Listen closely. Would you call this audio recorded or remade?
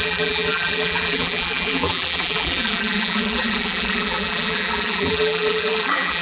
remade